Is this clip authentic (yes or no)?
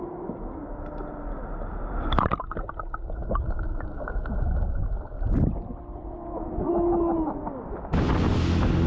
yes